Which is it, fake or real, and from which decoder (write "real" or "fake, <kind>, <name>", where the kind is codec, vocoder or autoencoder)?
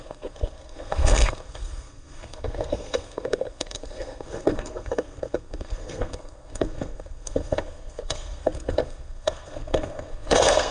fake, codec, SNAC